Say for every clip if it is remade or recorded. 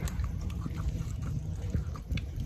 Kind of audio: remade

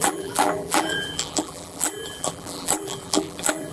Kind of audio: remade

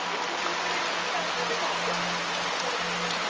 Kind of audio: recorded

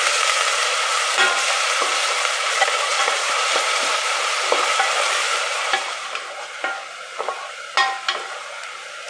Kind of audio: remade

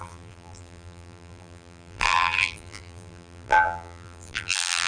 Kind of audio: remade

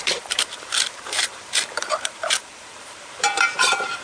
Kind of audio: remade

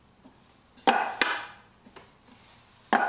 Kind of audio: recorded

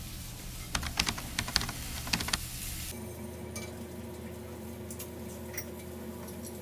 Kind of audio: recorded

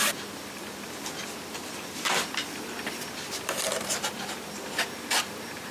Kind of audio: remade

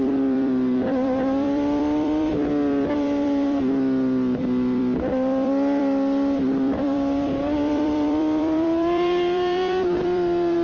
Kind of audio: remade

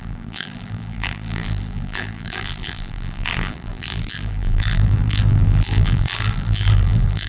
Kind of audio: remade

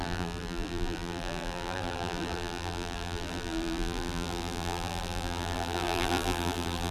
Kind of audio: remade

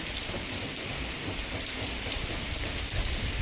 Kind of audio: recorded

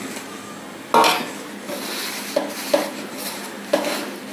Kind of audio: recorded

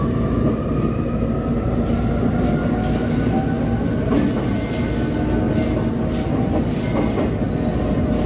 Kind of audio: recorded